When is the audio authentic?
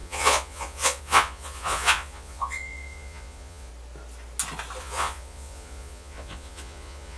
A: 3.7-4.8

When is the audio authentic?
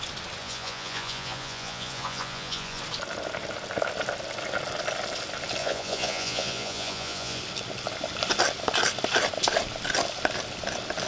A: 0.0-0.4; 2.8-5.6; 7.4-11.1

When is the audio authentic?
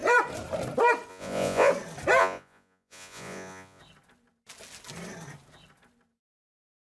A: 0.0-1.1; 1.7-2.2; 3.8-6.9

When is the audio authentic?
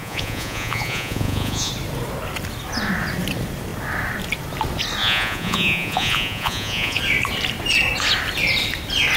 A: 1.7-5.0; 7.0-9.2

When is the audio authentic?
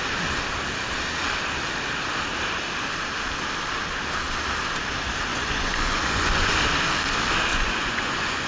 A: 0.0-5.3; 6.5-7.5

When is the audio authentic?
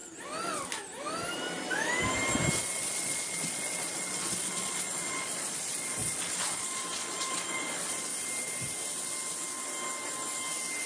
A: 0.0-2.6; 8.1-10.9